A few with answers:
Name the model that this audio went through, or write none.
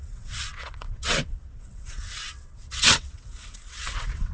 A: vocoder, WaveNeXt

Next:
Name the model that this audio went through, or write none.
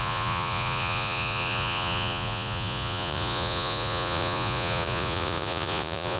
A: vocoder, Vocos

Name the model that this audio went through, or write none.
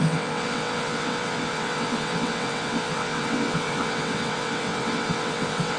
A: vocoder, WaveNeXt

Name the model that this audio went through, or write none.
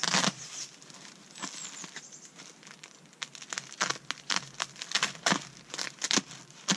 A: none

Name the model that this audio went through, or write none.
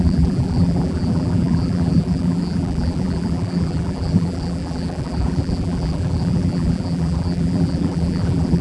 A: vocoder, BigVGAN v2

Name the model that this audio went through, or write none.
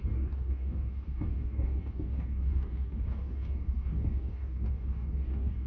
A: codec, DAC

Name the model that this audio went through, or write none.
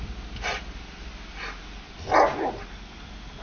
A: none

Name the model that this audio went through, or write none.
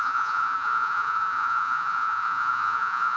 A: vocoder, Vocos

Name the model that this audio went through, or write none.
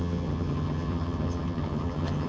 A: vocoder, HiFi-GAN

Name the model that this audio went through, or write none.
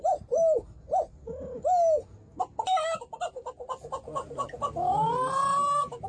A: none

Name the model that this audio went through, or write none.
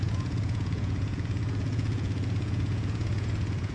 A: vocoder, Vocos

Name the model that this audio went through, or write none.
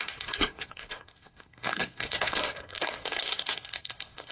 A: codec, SNAC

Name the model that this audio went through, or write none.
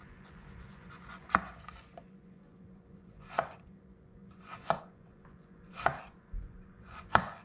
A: vocoder, Vocos